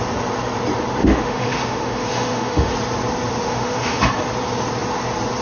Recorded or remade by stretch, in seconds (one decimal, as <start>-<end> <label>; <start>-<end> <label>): 0.0-1.0 recorded; 1.0-2.7 remade; 2.7-3.4 recorded; 3.4-4.1 remade; 4.1-5.4 recorded